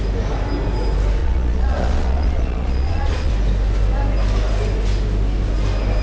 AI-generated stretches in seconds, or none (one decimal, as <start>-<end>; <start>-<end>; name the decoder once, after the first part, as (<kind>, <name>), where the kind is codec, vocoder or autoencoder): 1.2-3.3 (vocoder, Vocos)

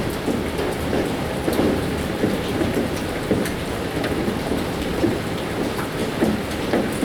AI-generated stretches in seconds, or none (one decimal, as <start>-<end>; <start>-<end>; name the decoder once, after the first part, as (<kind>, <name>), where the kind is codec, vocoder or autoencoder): 0.9-5.1 (vocoder, BigVGAN v2); 6.0-7.0